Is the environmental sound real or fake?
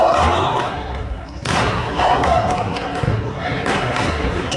fake